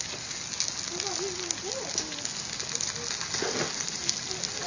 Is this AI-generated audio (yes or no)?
no